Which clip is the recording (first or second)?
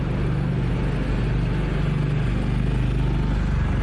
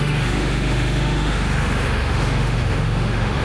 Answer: first